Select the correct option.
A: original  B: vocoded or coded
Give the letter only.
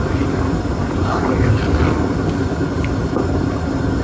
A